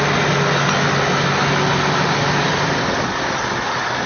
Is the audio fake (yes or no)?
no